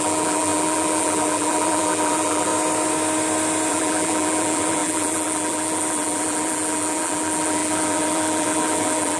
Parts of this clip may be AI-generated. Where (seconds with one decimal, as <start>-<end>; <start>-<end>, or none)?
0.0-2.5; 3.7-9.2